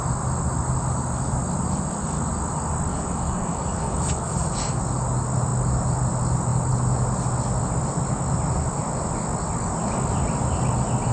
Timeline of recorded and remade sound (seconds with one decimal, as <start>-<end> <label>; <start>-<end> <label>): 0.0-2.9 recorded; 2.9-4.8 remade; 4.8-11.1 recorded